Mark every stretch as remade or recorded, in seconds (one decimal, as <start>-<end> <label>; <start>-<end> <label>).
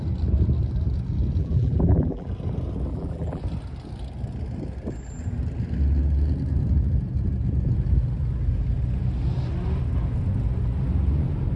0.0-1.4 recorded; 1.4-2.3 remade; 2.3-2.9 recorded; 2.9-3.4 remade; 3.4-11.6 recorded